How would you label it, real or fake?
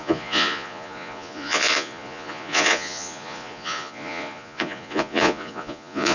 fake